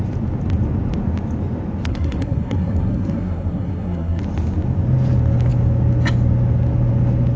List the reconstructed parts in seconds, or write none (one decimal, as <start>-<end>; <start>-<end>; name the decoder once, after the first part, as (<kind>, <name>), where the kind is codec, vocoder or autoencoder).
1.9-4.2 (codec, SNAC)